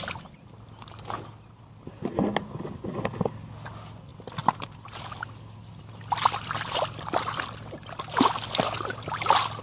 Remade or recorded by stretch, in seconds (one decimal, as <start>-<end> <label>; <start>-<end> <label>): 0.0-9.6 recorded